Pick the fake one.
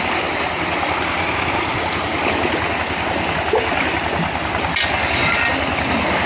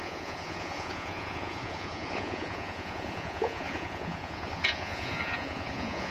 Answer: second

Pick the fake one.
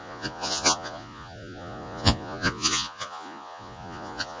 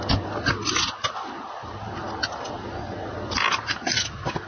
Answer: first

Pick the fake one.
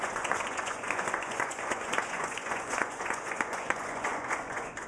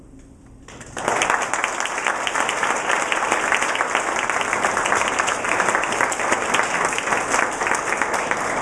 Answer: first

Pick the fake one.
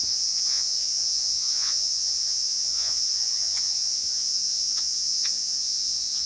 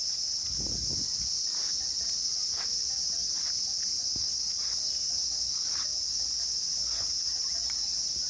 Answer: first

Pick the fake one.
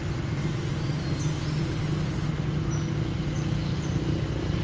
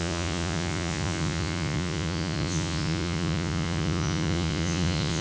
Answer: second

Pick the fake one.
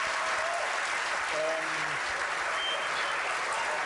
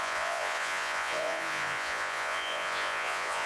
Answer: second